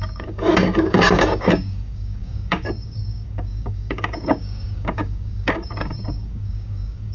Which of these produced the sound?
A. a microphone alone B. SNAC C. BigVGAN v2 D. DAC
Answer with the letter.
D